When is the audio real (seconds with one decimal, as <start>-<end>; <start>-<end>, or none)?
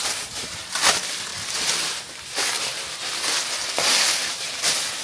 1.3-2.1; 2.7-3.4